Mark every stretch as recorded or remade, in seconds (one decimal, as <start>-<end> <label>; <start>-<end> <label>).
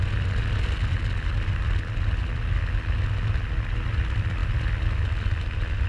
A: 0.0-5.9 recorded